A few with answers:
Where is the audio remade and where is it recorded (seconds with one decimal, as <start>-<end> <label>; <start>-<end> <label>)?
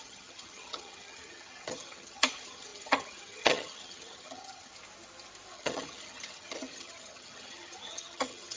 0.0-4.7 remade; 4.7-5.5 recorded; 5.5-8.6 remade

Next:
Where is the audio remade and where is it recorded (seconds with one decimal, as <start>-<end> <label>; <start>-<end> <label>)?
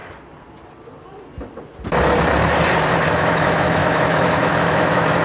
0.0-3.1 recorded; 3.1-5.2 remade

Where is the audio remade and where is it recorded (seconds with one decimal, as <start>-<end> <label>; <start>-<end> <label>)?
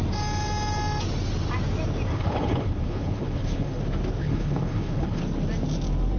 0.0-2.1 recorded; 2.1-3.8 remade; 3.8-4.2 recorded; 4.2-5.2 remade; 5.2-6.2 recorded